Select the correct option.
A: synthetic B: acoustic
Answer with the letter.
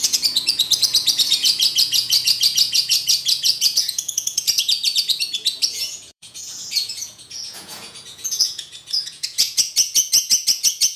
A